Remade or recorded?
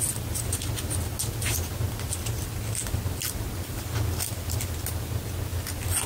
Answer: recorded